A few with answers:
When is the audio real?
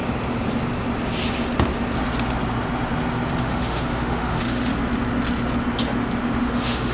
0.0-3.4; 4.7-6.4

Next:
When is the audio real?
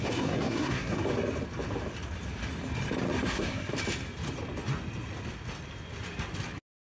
1.1-3.3; 3.7-6.9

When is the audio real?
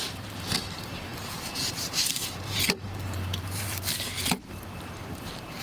none